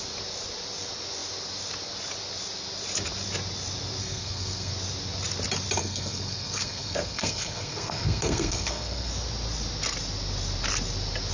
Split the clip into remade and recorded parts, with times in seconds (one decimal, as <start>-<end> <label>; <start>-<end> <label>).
0.0-4.0 recorded; 4.0-4.7 remade; 4.7-5.8 recorded; 5.8-9.1 remade; 9.1-11.3 recorded